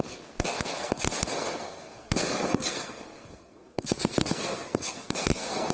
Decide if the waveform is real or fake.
fake